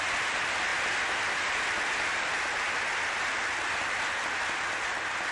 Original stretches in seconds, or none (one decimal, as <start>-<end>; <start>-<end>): 0.0-5.3